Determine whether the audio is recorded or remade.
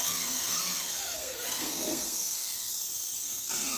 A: remade